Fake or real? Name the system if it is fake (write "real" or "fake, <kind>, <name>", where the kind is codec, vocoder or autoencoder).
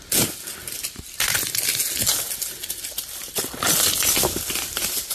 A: real